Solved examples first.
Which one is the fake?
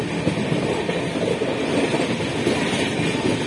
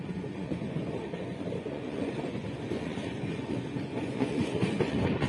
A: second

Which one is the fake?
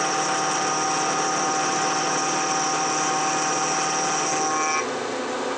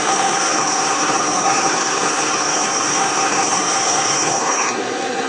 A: second